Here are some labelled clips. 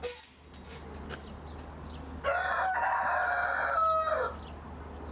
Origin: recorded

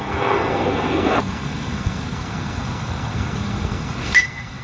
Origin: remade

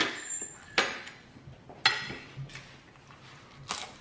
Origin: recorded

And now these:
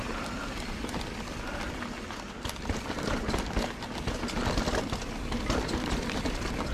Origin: recorded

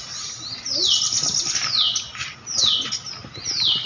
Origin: recorded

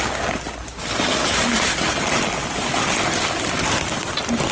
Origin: recorded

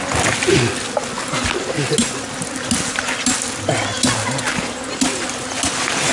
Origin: recorded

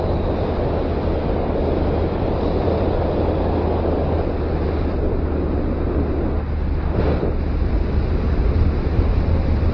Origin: recorded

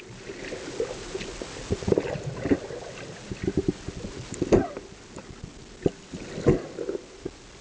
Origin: recorded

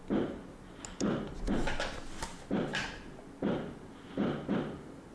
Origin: recorded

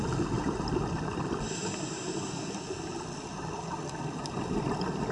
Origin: recorded